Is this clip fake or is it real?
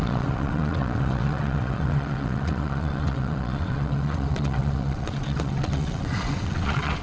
fake